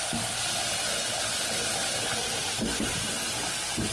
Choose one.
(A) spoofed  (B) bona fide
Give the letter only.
B